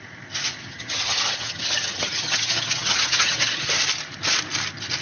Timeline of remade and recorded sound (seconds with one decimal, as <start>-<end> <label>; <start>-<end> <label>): 0.0-0.7 recorded; 0.7-3.7 remade; 3.7-5.0 recorded